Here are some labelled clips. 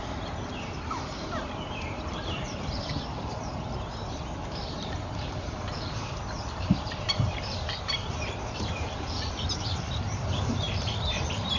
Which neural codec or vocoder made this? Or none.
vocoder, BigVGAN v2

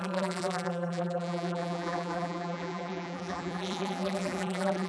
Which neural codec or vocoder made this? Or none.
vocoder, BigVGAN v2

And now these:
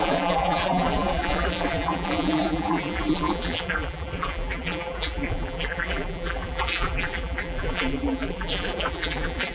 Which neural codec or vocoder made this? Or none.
vocoder, BigVGAN v2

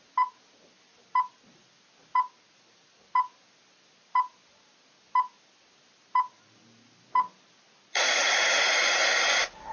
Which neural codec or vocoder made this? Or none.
none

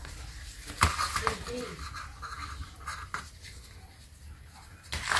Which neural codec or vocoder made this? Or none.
none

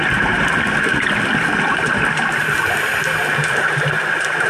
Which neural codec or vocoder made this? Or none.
none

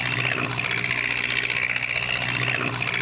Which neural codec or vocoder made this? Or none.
vocoder, BigVGAN v2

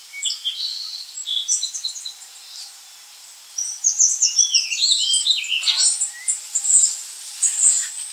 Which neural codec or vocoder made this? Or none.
none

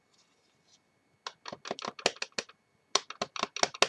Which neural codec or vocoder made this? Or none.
none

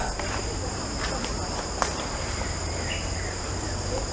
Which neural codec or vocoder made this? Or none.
vocoder, BigVGAN v2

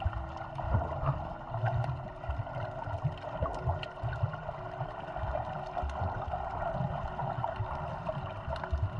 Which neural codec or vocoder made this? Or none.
none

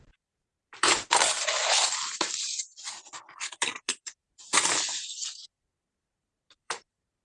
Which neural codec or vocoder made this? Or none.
vocoder, BigVGAN v2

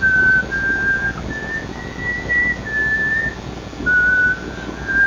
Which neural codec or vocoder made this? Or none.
none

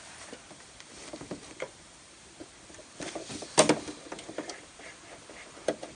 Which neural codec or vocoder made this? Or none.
vocoder, BigVGAN v2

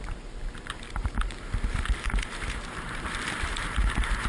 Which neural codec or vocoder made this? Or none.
vocoder, BigVGAN v2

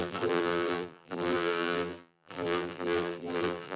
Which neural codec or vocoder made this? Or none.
vocoder, BigVGAN v2